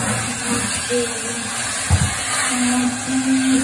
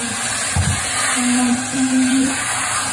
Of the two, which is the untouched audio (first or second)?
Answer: first